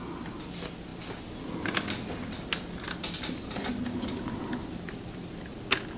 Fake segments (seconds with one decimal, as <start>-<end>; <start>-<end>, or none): none